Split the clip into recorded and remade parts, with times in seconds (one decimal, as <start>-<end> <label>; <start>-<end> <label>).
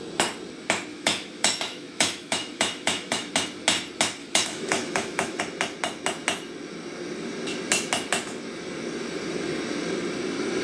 0.0-0.9 recorded; 0.9-3.3 remade; 3.3-4.2 recorded; 4.2-5.4 remade; 5.4-10.6 recorded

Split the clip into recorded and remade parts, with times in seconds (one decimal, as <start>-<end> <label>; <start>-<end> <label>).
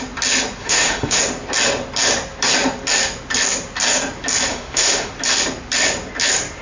0.0-0.6 recorded; 0.6-1.2 remade; 1.2-4.5 recorded; 4.5-5.1 remade; 5.1-6.6 recorded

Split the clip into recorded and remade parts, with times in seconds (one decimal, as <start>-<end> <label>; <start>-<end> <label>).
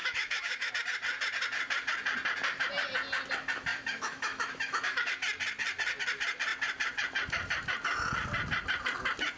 0.0-0.7 remade; 0.7-3.7 recorded; 3.7-5.1 remade; 5.1-9.4 recorded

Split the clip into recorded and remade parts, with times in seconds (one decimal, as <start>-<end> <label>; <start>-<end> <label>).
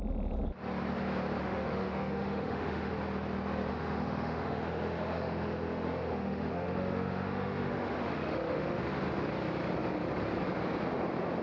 0.0-1.4 recorded; 1.4-2.9 remade; 2.9-3.7 recorded; 3.7-8.8 remade; 8.8-11.4 recorded